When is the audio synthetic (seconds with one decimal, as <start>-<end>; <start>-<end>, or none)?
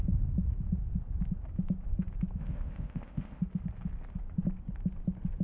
2.4-3.4